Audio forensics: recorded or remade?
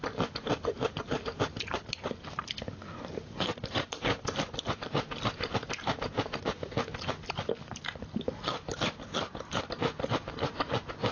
recorded